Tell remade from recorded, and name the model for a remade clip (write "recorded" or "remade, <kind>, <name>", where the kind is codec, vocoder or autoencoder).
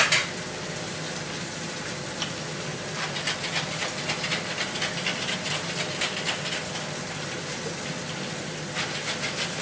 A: recorded